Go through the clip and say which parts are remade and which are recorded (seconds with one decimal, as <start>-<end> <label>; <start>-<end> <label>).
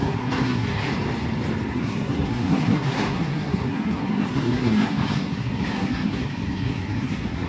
0.0-0.9 remade; 0.9-1.7 recorded; 1.7-7.5 remade